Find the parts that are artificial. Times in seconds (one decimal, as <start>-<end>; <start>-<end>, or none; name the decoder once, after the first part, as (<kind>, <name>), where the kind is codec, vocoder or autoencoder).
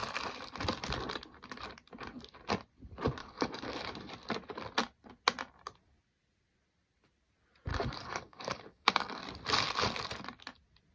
3.2-3.9 (codec, DAC); 7.7-9.2